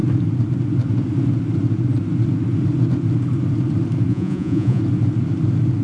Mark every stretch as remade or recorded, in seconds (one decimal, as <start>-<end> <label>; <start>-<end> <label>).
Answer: 0.0-4.1 recorded; 4.1-4.8 remade; 4.8-5.8 recorded